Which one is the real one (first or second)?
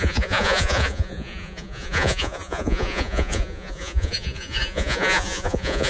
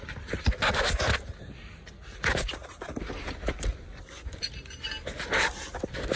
second